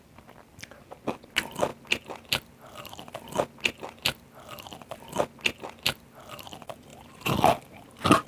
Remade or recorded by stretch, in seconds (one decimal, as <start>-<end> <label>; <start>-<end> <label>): 0.0-8.3 recorded